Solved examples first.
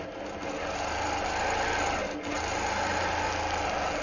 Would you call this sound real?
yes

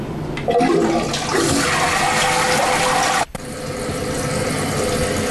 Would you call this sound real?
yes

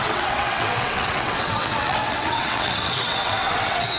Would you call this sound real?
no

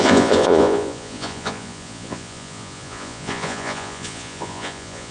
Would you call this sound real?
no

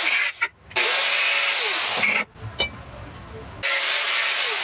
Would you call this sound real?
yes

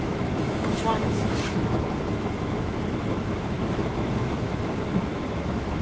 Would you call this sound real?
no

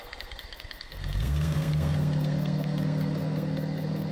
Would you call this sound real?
no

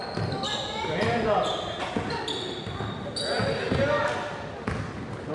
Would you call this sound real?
yes